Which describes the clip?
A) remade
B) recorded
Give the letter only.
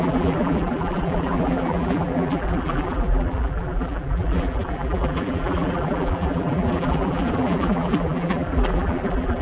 A